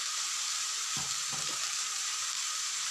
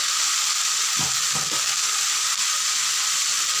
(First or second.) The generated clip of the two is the first